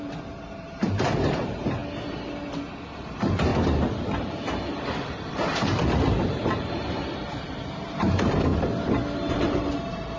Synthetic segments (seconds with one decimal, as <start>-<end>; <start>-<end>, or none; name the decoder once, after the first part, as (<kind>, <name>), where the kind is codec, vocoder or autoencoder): 0.0-1.8 (vocoder, BigVGAN v2); 3.0-3.5; 5.1-8.5; 9.3-10.2

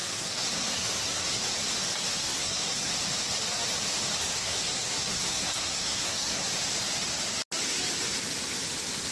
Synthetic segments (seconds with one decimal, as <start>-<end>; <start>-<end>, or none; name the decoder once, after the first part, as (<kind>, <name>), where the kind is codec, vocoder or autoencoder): 0.0-1.4 (codec, SNAC); 2.2-2.9; 4.2-6.5

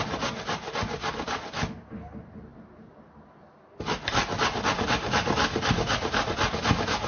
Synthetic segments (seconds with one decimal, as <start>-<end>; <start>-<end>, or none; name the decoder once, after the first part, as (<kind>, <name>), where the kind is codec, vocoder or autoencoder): none

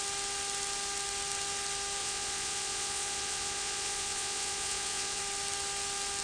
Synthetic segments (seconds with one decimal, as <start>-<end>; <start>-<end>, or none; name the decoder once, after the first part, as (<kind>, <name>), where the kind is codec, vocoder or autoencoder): 2.0-5.2 (vocoder, Vocos)

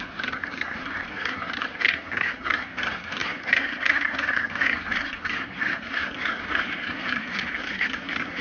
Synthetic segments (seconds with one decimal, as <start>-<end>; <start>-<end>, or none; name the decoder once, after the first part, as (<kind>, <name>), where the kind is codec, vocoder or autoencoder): 0.0-8.4 (codec, SNAC)

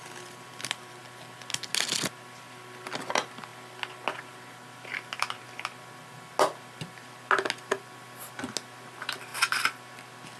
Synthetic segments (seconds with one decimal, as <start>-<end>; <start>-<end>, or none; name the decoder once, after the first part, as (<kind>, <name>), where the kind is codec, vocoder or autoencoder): none